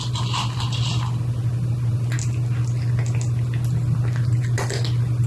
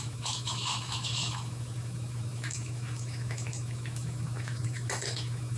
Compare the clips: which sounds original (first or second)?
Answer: first